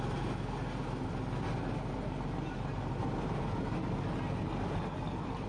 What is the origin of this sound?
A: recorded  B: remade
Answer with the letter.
A